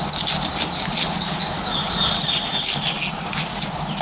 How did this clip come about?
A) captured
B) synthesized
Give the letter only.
A